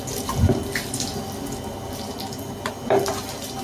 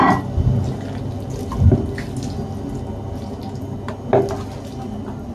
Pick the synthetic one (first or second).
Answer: first